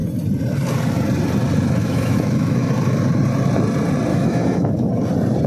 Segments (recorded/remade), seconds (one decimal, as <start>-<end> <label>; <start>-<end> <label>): 0.0-1.8 recorded; 1.8-2.7 remade; 2.7-4.1 recorded; 4.1-4.9 remade; 4.9-5.5 recorded